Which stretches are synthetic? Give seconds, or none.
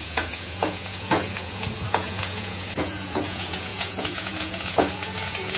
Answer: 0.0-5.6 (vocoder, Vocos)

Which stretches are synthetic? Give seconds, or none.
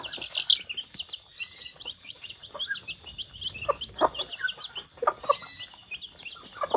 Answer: 1.3-2.6 (vocoder, Vocos)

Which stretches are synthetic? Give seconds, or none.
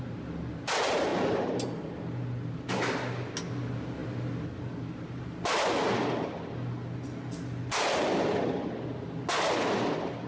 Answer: none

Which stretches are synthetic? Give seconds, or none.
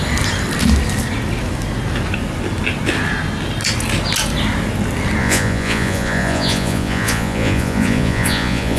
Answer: 5.2-8.8 (vocoder, Vocos)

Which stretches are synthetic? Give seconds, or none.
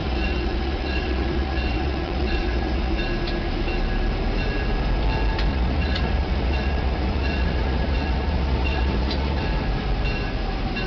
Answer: 0.0-3.0 (vocoder, Vocos); 5.5-9.4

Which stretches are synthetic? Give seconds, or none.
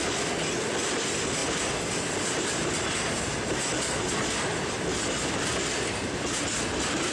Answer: none